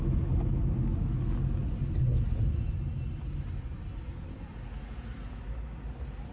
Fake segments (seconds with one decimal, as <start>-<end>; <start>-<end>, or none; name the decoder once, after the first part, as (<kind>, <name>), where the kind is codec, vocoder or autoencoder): none